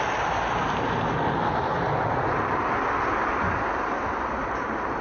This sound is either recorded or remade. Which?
recorded